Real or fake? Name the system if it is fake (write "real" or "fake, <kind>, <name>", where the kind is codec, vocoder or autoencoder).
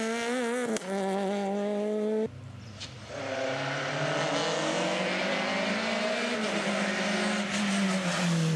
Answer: real